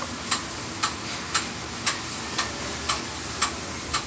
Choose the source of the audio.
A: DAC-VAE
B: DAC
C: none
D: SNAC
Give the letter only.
C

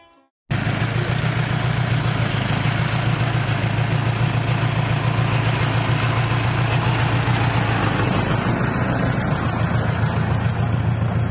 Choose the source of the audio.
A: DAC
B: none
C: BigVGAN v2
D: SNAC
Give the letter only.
B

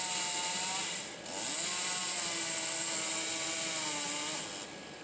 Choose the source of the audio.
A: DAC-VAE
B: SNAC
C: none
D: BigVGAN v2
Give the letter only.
C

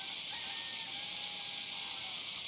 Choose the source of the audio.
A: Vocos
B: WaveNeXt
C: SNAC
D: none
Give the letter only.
D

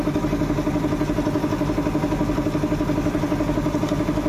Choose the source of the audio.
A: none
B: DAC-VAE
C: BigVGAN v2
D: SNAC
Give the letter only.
A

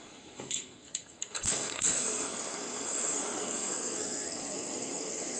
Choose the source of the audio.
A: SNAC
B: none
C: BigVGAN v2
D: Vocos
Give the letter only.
A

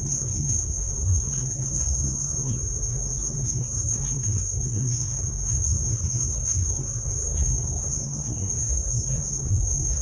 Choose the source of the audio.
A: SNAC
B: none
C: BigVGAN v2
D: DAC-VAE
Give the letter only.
A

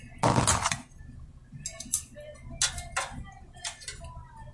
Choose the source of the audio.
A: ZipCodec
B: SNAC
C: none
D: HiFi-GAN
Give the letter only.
C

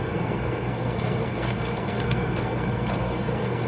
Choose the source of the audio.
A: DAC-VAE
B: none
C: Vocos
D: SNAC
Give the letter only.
D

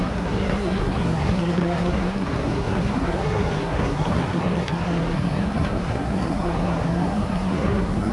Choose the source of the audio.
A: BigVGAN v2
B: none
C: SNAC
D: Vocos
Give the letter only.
C